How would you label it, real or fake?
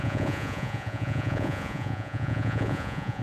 fake